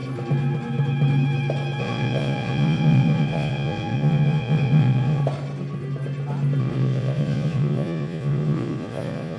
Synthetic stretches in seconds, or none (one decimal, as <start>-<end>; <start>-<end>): 1.8-5.2; 6.6-9.4